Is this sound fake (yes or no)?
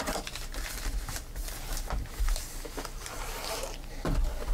no